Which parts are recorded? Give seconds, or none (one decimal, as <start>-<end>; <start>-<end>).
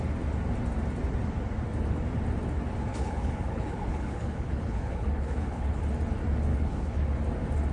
0.0-2.9; 5.8-6.5; 7.1-7.7